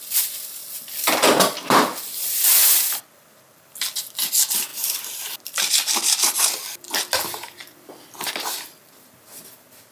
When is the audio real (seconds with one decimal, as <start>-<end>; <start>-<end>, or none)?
0.0-4.7; 5.7-9.9